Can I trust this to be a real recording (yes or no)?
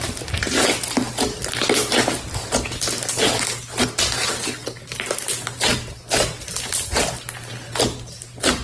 yes